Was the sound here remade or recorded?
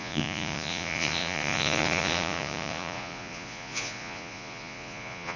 remade